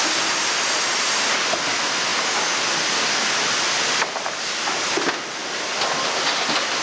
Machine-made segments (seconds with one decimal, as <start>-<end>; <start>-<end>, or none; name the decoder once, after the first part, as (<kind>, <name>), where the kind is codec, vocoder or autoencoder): none